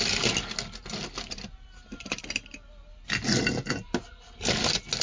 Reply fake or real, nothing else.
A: real